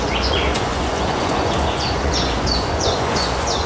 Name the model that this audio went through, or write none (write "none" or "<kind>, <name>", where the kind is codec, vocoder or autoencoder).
vocoder, Vocos